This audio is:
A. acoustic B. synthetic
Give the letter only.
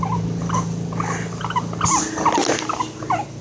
A